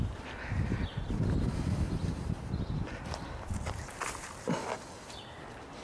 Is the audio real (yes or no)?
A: yes